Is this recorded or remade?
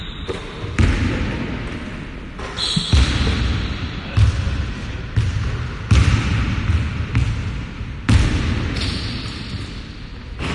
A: recorded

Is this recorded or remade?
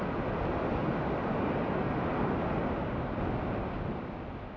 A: recorded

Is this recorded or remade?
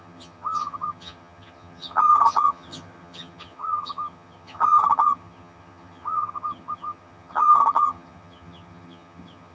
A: remade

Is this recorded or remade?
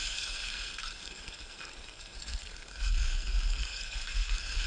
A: remade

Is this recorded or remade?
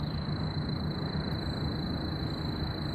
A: recorded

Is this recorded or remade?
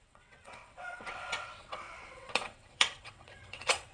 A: remade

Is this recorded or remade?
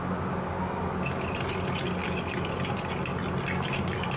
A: recorded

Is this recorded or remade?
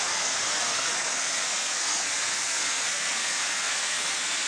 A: remade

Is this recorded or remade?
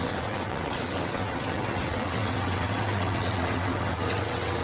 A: remade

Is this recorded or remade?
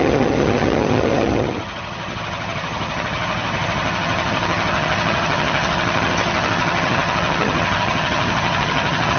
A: remade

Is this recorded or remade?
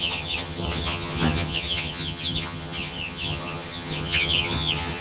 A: remade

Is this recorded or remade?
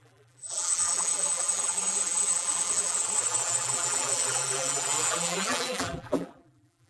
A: remade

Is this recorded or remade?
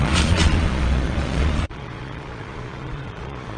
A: remade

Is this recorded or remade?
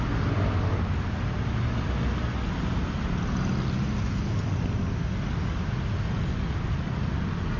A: recorded